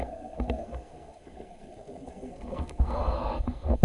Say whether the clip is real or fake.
fake